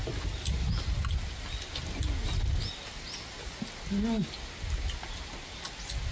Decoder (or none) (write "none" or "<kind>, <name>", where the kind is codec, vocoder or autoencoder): none